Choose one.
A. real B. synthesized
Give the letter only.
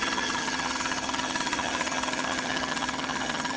B